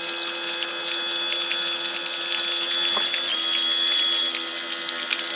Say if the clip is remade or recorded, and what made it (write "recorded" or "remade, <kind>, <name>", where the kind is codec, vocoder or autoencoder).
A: recorded